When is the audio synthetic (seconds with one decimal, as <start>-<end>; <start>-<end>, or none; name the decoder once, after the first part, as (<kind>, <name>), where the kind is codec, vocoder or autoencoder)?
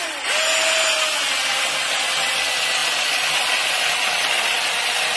none